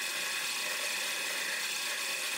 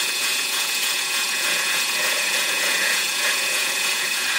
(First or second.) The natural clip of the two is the first